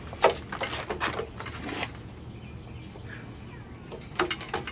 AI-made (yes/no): no